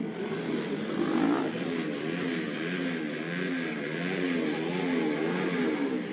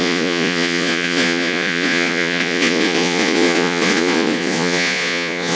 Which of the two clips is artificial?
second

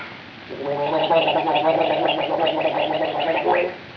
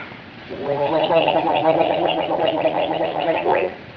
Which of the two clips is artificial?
second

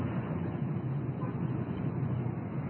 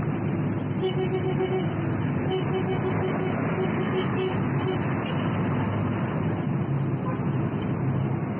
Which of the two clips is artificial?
first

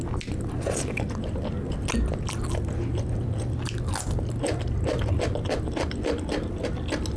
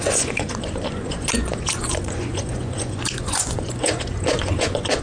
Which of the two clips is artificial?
second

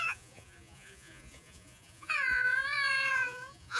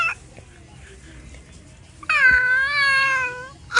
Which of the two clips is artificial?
first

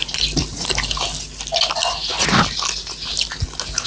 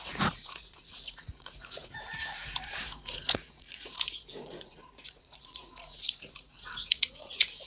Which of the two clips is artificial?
second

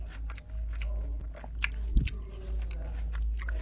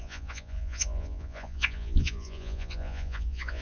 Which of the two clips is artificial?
second